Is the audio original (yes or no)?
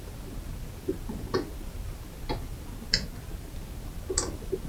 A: yes